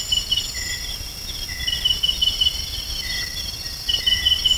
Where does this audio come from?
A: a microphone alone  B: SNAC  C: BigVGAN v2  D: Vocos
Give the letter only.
A